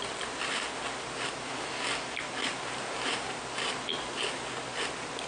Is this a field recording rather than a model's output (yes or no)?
yes